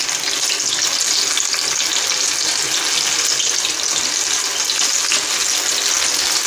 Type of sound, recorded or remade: recorded